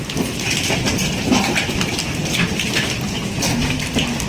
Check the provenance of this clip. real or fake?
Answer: real